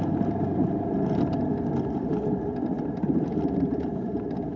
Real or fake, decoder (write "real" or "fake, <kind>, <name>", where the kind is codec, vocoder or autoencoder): fake, vocoder, BigVGAN v2